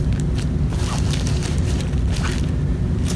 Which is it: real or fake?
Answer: real